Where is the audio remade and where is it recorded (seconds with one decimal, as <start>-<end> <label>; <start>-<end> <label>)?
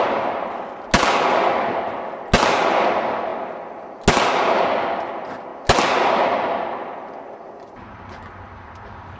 0.0-9.2 recorded